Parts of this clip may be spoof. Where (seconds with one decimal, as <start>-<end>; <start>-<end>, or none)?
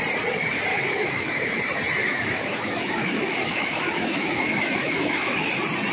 0.7-1.6; 2.0-5.5